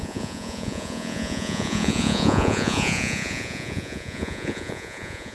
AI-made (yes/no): yes